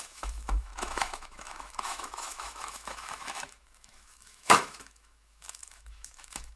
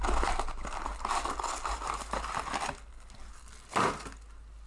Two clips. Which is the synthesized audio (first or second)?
first